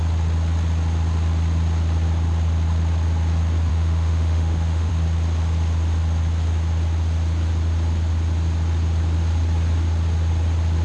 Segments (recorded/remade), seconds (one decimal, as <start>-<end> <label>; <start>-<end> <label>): 0.0-3.7 recorded; 3.7-4.9 remade; 4.9-10.8 recorded